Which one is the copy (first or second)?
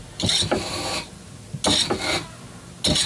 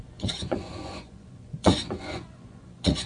second